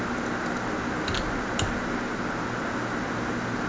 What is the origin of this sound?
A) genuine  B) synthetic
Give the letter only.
A